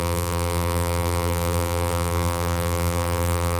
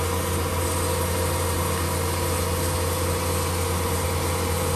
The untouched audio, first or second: second